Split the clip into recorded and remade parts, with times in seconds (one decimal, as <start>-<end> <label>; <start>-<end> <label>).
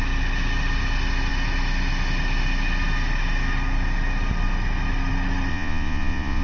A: 0.0-5.5 recorded; 5.5-6.4 remade